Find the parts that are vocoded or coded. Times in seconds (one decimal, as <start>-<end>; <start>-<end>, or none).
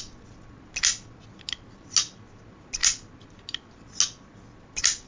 none